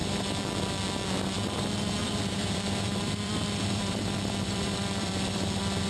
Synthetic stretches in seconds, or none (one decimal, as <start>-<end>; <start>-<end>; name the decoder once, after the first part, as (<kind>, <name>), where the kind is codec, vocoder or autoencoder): 2.0-5.5 (vocoder, BigVGAN v2)